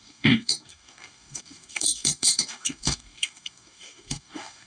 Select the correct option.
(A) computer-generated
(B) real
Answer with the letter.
A